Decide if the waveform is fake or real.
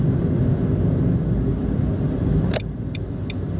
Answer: real